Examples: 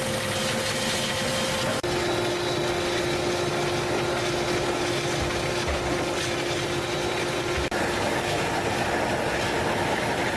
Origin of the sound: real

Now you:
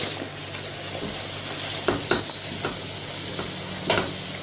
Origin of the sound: real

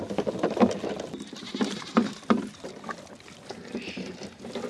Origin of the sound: real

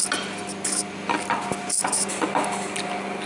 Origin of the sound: real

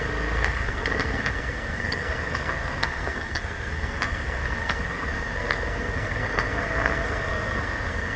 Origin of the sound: fake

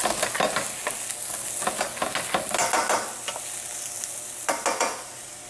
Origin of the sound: real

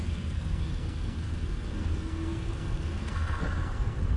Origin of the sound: fake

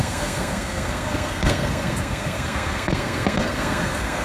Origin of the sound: fake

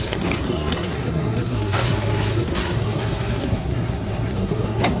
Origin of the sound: fake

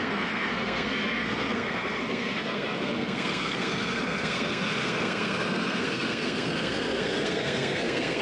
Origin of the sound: fake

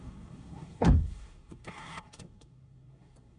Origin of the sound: fake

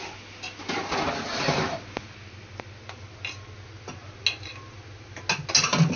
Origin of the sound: real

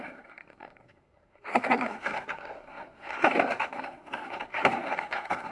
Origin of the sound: fake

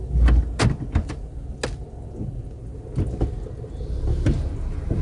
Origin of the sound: real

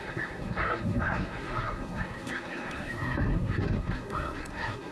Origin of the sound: fake